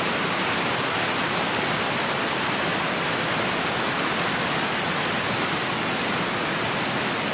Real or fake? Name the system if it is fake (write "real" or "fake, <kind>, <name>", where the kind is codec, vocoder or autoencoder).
real